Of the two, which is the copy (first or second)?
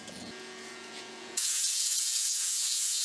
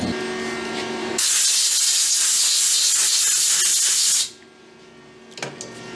first